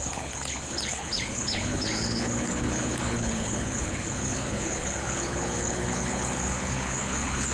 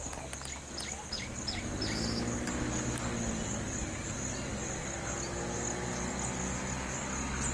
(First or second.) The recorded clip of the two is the second